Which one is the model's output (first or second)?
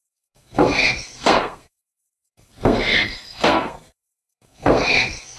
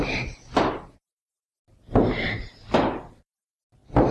first